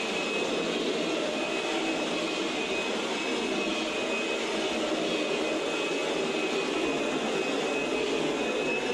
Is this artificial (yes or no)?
no